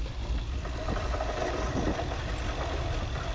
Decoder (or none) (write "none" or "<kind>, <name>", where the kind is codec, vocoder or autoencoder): none